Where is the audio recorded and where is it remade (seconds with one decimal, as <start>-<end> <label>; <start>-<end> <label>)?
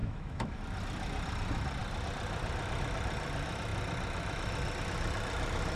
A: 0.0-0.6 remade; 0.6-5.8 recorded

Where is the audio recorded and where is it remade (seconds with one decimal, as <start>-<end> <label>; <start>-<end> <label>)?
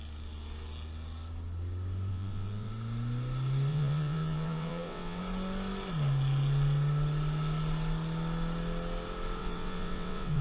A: 0.0-2.1 recorded; 2.1-2.7 remade; 2.7-3.7 recorded; 3.7-5.2 remade; 5.2-9.4 recorded; 9.4-10.4 remade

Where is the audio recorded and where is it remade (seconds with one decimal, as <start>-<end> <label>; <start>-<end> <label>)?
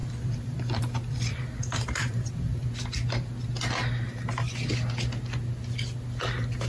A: 0.0-2.7 remade; 2.7-6.7 recorded